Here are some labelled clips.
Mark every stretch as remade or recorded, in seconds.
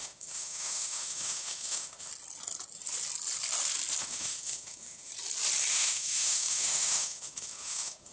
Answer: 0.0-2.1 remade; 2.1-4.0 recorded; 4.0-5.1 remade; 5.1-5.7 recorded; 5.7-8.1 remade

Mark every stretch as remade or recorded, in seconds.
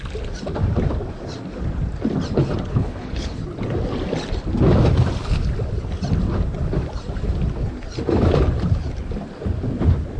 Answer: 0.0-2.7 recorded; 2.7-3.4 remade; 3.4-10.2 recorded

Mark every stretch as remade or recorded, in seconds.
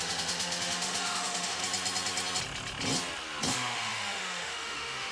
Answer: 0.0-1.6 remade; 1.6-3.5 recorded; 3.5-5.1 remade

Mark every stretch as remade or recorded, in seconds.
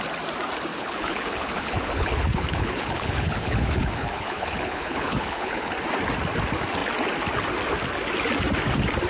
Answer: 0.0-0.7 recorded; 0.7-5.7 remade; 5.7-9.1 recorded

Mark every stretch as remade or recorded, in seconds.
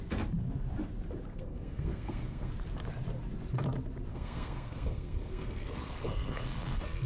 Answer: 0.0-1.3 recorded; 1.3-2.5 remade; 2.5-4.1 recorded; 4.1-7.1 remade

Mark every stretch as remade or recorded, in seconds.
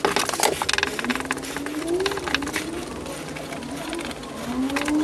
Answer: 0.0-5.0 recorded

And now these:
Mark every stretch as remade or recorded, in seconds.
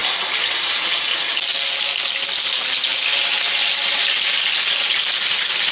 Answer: 0.0-5.7 recorded